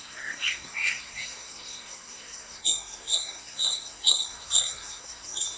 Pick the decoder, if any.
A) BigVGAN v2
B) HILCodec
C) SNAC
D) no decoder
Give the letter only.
C